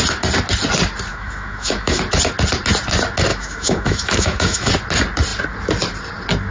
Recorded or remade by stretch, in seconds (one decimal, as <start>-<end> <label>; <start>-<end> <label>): 0.0-1.1 recorded; 1.1-2.0 remade; 2.0-3.3 recorded; 3.3-4.7 remade; 4.7-6.5 recorded